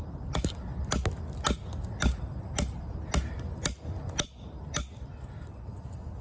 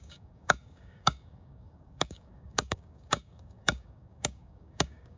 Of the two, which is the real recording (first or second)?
first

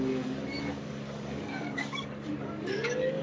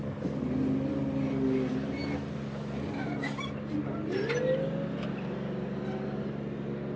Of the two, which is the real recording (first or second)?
second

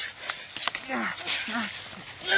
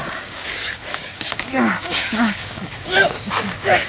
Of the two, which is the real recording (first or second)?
first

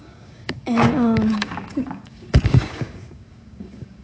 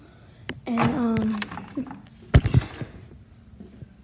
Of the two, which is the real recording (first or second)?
second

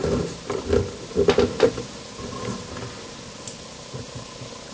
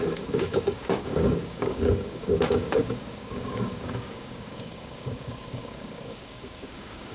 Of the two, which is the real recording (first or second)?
first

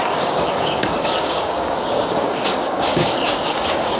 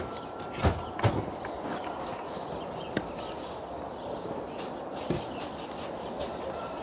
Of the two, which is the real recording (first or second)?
second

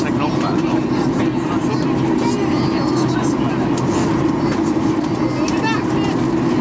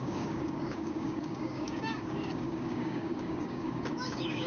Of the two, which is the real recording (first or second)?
first